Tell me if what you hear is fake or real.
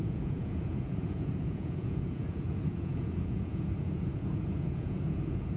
fake